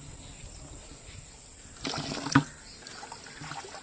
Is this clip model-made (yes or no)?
no